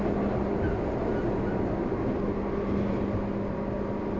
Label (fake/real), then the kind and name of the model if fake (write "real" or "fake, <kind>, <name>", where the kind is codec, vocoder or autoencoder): real